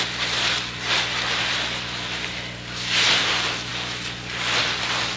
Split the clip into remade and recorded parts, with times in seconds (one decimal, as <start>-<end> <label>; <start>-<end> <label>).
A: 0.0-5.2 recorded